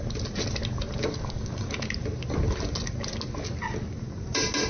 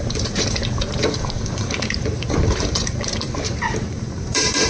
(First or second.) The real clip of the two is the first